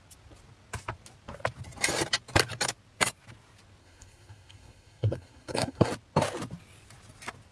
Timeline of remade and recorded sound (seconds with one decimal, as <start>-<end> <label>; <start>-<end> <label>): 0.0-3.8 recorded; 3.8-5.9 remade; 5.9-7.5 recorded